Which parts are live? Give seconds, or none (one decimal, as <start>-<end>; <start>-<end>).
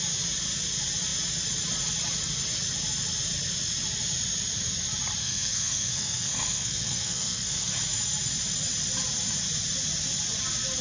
0.0-5.2; 7.7-10.8